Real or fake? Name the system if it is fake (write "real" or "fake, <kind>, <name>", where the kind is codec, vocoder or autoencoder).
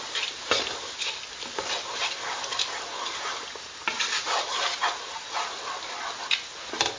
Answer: real